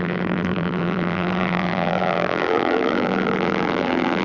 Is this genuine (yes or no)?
no